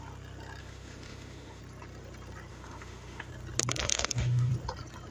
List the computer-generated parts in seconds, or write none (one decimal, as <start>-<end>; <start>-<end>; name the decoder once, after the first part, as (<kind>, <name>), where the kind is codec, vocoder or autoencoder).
0.6-1.6 (autoencoder, DAC-VAE); 2.5-3.3; 3.9-4.5